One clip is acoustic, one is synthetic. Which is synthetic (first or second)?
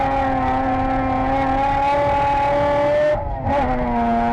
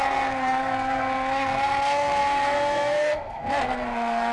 second